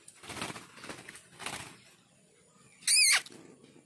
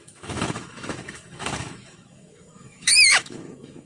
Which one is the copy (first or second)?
second